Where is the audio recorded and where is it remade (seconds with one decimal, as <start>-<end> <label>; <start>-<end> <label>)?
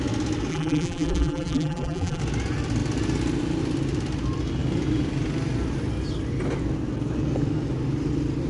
0.0-0.5 recorded; 0.5-2.2 remade; 2.2-8.5 recorded